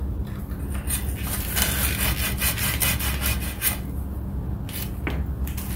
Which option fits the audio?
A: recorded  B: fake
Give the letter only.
A